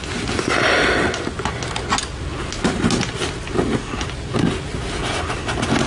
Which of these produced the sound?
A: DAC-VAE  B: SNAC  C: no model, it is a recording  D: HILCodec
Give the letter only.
C